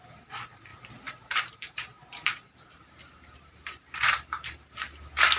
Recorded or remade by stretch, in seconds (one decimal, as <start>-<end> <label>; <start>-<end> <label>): 0.0-0.7 remade; 0.7-1.3 recorded; 1.3-5.4 remade